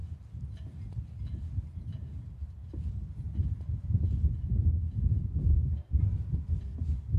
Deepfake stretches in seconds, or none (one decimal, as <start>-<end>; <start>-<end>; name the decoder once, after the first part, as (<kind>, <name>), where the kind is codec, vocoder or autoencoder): 4.6-6.1 (vocoder, BigVGAN v2)

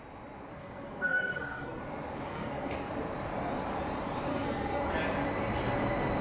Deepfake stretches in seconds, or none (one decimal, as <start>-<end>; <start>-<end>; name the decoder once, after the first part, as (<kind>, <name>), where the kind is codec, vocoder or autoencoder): 0.5-1.8 (codec, SNAC); 2.3-2.9; 4.3-4.8

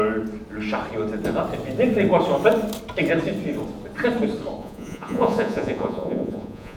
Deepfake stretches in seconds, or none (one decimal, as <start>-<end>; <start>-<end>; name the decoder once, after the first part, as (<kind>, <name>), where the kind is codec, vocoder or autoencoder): 4.6-6.8 (vocoder, Vocos)